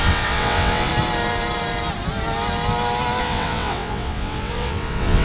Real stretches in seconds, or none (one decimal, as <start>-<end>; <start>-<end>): 0.9-3.2